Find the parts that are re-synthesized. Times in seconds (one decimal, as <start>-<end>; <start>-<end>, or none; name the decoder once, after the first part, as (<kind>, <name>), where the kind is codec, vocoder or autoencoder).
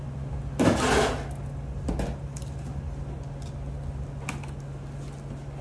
none